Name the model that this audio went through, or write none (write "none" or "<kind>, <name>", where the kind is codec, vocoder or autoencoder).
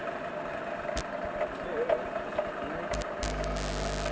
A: none